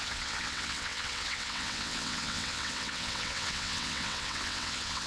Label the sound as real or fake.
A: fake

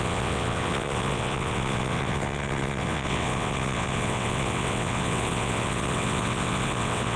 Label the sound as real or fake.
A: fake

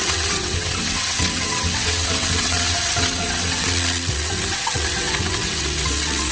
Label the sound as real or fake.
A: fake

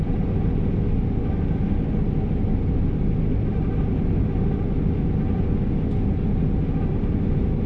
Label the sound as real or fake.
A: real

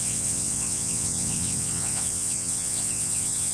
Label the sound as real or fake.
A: fake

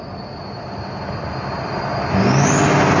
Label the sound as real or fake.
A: real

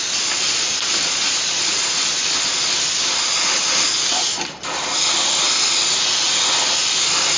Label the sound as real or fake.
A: real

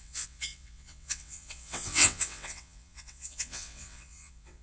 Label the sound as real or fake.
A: fake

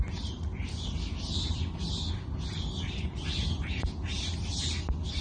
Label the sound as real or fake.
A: real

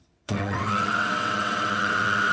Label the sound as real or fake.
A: fake